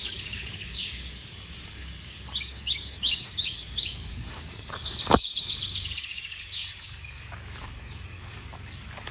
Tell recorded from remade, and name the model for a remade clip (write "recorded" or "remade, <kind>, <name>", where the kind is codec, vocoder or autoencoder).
remade, codec, DAC